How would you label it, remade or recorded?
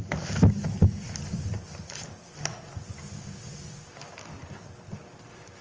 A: recorded